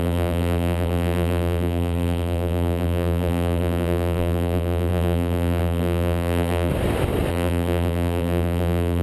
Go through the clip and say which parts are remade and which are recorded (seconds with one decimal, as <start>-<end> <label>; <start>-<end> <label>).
0.0-6.7 remade; 6.7-7.3 recorded; 7.3-9.0 remade